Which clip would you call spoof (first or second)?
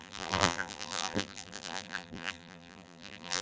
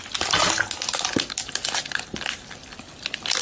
first